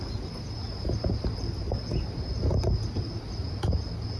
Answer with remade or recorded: recorded